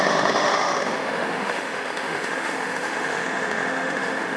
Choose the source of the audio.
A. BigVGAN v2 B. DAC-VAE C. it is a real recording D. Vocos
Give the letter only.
B